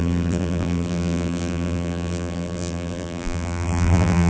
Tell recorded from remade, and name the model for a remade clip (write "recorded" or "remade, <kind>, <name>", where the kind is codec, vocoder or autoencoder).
remade, vocoder, BigVGAN v2